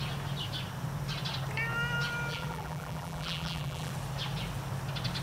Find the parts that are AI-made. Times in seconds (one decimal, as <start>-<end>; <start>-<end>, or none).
2.3-3.9